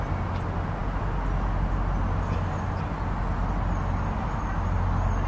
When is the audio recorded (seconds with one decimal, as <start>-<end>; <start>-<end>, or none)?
0.0-5.3

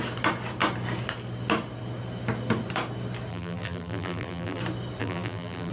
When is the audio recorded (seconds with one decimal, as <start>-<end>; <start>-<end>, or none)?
0.0-3.3; 4.6-5.0

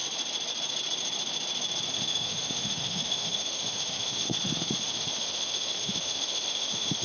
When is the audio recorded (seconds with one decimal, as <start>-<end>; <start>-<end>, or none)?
0.0-1.9

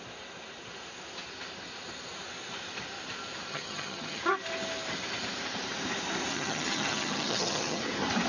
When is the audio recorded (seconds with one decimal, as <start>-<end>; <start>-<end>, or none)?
0.0-3.5; 4.2-6.3; 7.8-8.3

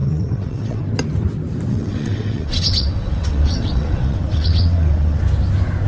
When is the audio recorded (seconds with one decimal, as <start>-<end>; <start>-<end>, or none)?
0.8-1.7; 5.2-5.9

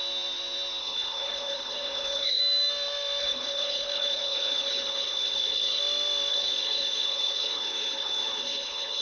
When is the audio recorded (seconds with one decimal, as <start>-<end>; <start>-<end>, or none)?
0.0-0.8; 2.4-3.2; 5.8-6.3